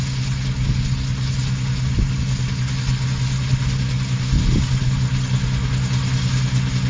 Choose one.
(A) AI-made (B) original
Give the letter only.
B